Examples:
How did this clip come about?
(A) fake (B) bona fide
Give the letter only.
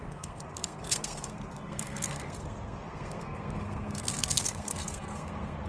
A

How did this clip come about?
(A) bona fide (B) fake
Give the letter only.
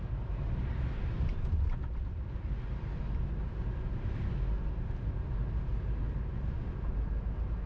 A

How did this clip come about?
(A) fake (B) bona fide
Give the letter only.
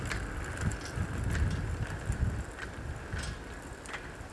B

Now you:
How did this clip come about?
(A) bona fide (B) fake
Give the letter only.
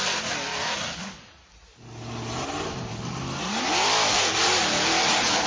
A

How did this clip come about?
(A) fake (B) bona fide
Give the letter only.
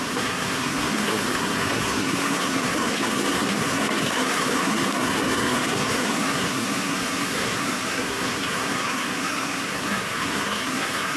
A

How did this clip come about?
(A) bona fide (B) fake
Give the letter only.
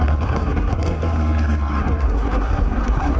B